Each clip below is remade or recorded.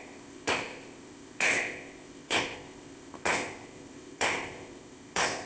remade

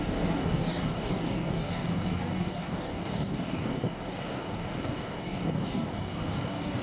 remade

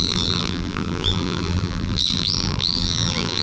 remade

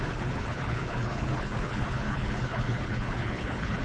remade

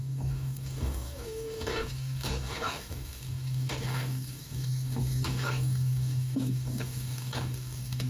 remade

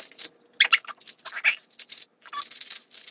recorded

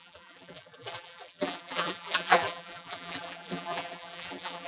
remade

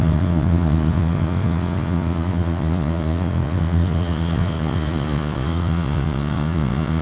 remade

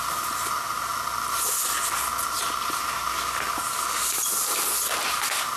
recorded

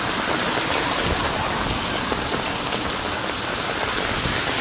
recorded